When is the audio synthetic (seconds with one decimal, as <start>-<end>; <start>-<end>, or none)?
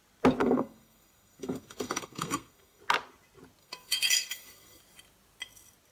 0.4-2.8; 3.6-4.8